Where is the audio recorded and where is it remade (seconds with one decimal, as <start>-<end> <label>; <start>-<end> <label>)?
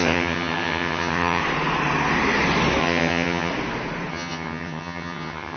0.0-1.4 remade; 1.4-2.8 recorded; 2.8-3.5 remade; 3.5-4.1 recorded; 4.1-5.6 remade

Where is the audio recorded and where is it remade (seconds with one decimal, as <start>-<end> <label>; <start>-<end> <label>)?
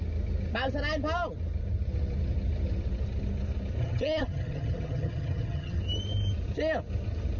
0.0-3.8 recorded; 3.8-5.8 remade; 5.8-7.4 recorded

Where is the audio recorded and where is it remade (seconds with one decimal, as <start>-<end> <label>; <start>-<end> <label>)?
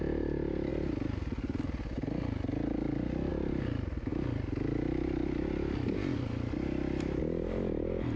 0.0-8.2 recorded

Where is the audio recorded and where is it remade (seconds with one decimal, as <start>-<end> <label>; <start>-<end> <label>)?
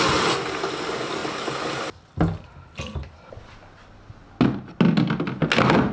0.0-5.9 recorded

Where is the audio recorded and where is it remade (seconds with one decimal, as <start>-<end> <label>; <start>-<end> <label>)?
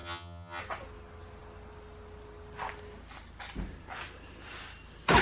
0.0-0.6 remade; 0.6-5.2 recorded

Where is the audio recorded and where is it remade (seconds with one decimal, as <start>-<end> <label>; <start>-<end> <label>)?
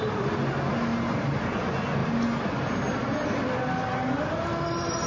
0.0-5.1 recorded